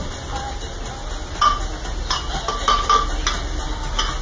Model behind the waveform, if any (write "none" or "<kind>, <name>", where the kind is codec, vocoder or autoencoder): none